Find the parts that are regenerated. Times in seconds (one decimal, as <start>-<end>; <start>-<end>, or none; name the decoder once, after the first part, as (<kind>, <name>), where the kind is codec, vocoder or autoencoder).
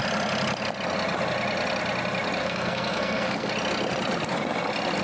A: 2.4-3.5 (codec, SNAC)